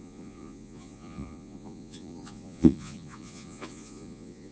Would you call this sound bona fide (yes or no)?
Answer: no